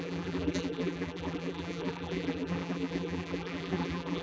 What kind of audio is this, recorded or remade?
remade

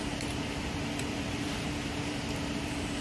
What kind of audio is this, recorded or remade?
remade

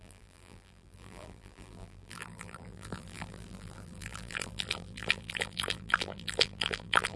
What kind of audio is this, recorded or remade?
remade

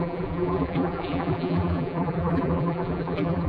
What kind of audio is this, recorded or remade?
remade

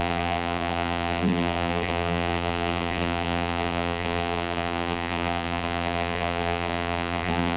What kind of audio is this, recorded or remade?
remade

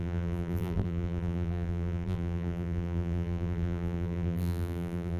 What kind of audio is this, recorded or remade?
remade